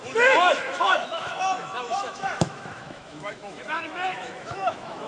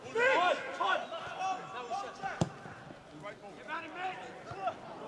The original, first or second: second